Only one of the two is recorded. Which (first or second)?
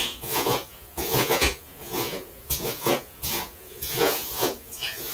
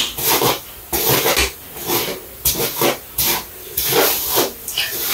second